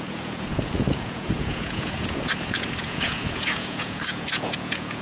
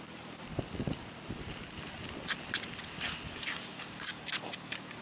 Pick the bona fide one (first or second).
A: second